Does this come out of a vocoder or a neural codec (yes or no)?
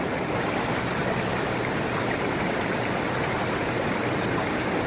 no